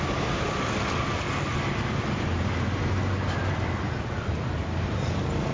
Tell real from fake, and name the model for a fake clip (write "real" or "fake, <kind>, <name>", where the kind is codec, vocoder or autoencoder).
real